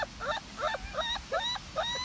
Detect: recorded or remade recorded